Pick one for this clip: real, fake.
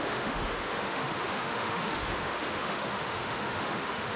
fake